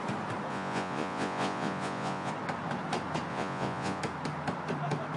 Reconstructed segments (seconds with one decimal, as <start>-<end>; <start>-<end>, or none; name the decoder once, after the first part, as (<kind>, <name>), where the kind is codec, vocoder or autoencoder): 0.5-2.3 (vocoder, Vocos); 3.3-4.0